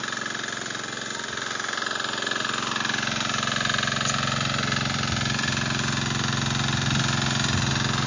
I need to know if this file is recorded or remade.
recorded